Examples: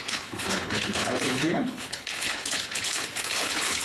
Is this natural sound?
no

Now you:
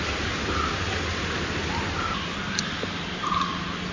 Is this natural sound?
yes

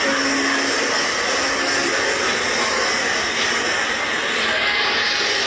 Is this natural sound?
yes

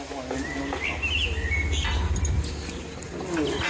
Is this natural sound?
yes